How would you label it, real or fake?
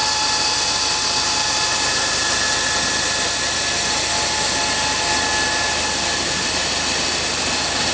real